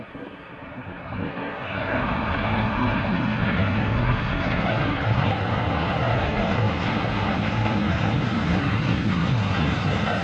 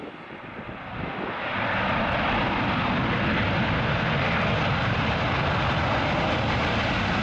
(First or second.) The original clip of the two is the second